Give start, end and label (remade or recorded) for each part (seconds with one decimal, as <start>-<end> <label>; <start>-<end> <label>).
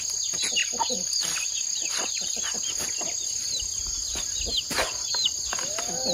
0.0-0.6 recorded; 0.6-2.4 remade; 2.4-6.1 recorded